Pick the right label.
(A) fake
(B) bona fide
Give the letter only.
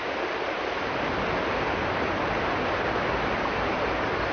B